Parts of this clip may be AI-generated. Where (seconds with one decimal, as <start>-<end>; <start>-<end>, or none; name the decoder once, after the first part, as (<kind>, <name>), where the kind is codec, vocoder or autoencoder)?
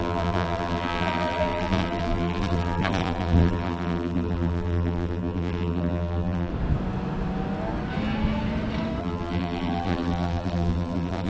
0.0-6.5 (vocoder, BigVGAN v2); 9.0-11.3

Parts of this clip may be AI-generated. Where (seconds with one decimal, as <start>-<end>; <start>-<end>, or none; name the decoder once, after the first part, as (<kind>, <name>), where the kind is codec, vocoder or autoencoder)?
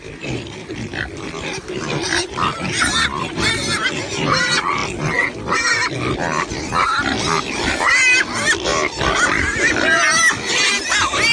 none